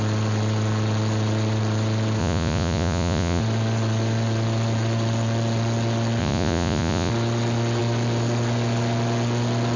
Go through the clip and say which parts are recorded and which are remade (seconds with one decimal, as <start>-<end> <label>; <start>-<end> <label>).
0.0-2.2 recorded; 2.2-3.4 remade; 3.4-6.2 recorded; 6.2-7.1 remade; 7.1-9.8 recorded